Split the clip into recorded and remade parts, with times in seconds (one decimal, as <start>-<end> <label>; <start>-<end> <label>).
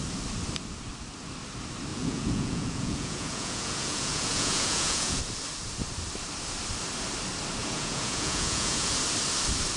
0.0-1.9 recorded; 1.9-5.2 remade; 5.2-7.6 recorded; 7.6-8.9 remade; 8.9-9.8 recorded